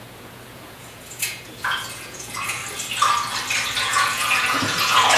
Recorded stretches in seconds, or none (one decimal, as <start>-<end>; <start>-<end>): 2.6-3.8